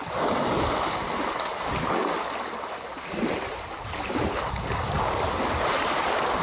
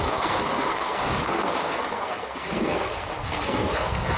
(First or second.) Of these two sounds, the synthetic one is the second